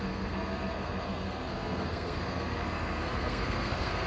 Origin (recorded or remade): remade